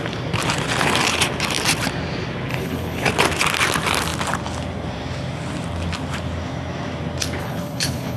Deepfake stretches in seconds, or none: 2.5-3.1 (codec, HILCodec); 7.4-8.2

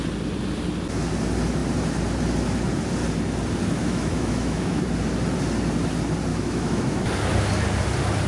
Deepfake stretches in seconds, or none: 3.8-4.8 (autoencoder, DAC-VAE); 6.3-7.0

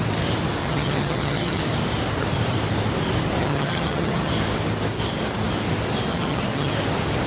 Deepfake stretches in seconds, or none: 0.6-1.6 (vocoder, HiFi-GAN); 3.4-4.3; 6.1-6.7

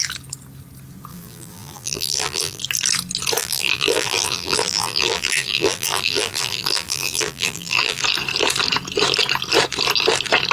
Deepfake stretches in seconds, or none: 1.1-2.6 (vocoder, BigVGAN v2); 3.4-8.0

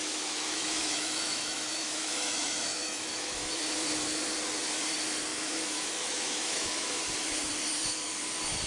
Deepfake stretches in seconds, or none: 0.0-3.6 (autoencoder, DAC-VAE); 5.3-7.0

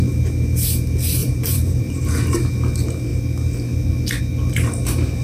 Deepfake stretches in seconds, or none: 1.2-2.1 (vocoder, BigVGAN v2)

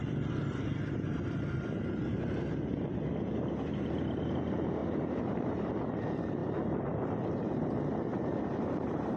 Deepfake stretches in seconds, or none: 4.8-5.8 (vocoder, BigVGAN v2); 8.1-9.2